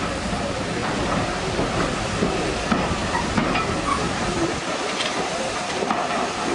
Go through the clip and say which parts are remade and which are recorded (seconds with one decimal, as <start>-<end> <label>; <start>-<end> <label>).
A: 0.0-0.8 remade; 0.8-2.4 recorded; 2.4-6.5 remade